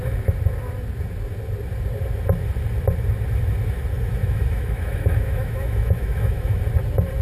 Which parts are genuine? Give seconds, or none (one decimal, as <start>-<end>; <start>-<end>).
0.0-4.2; 6.6-7.2